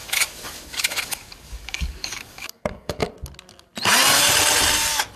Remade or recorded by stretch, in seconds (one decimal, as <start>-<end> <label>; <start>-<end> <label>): 0.0-3.1 remade; 3.1-5.2 recorded